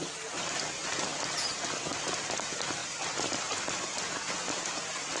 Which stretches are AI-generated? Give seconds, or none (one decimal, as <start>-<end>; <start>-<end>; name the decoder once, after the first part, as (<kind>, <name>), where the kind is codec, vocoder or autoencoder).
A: none